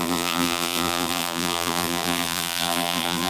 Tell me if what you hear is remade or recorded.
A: remade